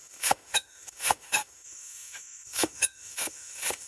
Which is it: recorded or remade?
remade